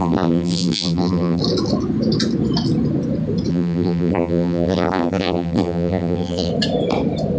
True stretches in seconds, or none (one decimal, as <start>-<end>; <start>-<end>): 1.4-3.5; 6.5-7.4